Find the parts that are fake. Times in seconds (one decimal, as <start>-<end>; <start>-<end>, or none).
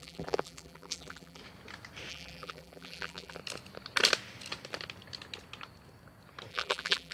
0.0-1.4; 2.1-3.4; 6.5-7.1